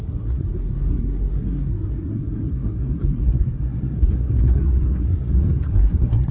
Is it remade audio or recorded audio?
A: remade